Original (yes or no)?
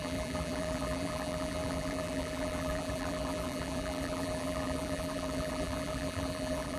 no